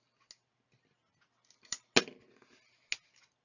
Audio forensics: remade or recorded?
recorded